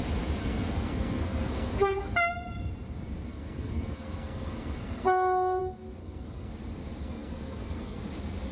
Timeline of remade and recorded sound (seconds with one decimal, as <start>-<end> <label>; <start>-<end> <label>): 0.0-0.4 recorded; 0.4-2.1 remade; 2.1-3.3 recorded; 3.3-5.6 remade; 5.6-6.0 recorded; 6.0-6.5 remade; 6.5-7.0 recorded; 7.0-8.0 remade; 8.0-8.5 recorded